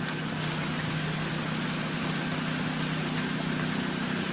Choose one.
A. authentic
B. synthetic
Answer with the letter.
A